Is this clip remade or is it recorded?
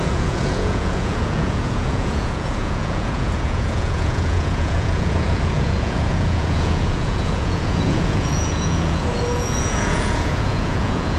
remade